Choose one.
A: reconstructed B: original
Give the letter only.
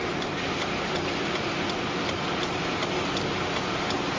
B